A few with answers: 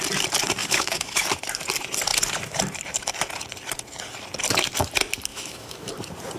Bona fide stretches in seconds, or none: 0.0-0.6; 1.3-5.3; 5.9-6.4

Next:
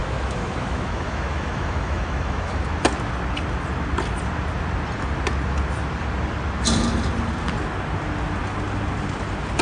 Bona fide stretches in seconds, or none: 2.7-9.6

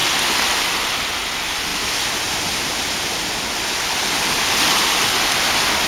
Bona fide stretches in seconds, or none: 0.0-5.9